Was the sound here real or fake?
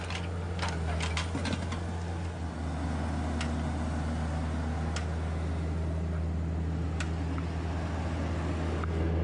real